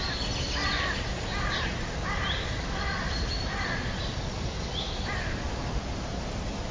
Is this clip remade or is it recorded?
recorded